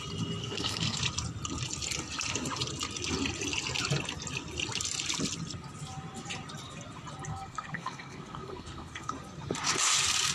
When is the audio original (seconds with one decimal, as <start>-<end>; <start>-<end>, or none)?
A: 0.0-0.4; 1.0-7.3; 9.1-10.3